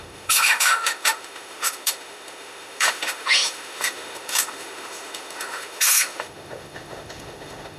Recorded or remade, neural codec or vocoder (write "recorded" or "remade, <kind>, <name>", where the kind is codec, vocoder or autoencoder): remade, autoencoder, DAC-VAE